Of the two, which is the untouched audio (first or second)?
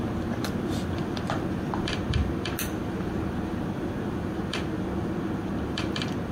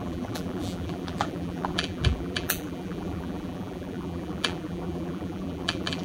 first